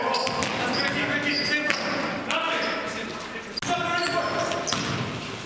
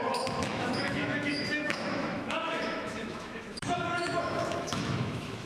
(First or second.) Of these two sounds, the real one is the first